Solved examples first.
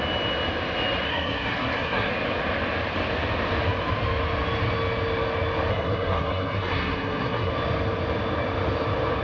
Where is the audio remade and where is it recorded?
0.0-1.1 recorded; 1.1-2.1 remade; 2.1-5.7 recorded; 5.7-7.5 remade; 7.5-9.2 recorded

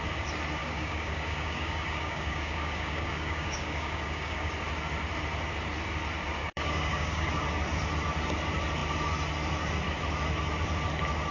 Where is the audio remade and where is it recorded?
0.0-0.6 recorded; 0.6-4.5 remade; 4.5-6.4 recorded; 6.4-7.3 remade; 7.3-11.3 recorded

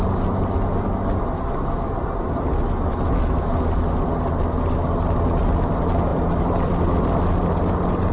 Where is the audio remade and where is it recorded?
0.0-6.1 recorded; 6.1-6.7 remade; 6.7-8.1 recorded

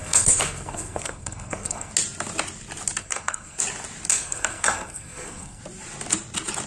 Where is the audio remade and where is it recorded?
0.0-1.9 remade; 1.9-3.0 recorded; 3.0-3.6 remade; 3.6-4.1 recorded; 4.1-5.6 remade; 5.6-6.7 recorded

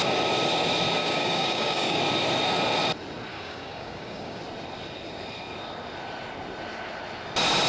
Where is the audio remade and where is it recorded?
0.0-1.0 recorded; 1.0-2.0 remade; 2.0-3.3 recorded; 3.3-4.4 remade; 4.4-7.7 recorded